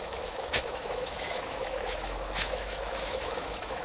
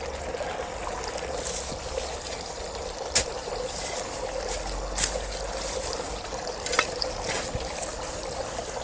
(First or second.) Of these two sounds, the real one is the second